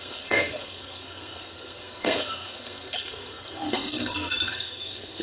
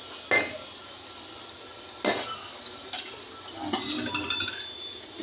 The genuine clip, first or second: second